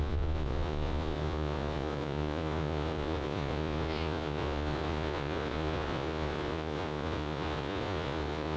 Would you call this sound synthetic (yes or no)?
yes